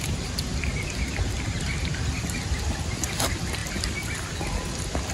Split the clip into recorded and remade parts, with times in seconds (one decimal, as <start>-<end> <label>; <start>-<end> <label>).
0.0-5.1 recorded